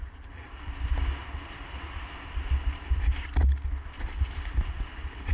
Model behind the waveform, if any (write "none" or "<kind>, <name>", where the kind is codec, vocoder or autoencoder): none